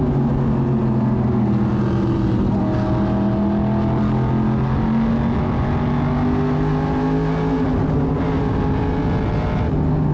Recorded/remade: recorded